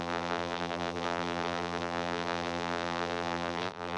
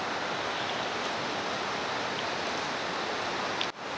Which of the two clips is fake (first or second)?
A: first